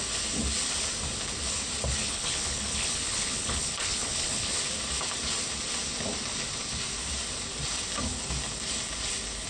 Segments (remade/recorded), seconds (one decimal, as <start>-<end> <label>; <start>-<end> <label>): 0.0-2.0 recorded; 2.0-4.6 remade; 4.6-9.5 recorded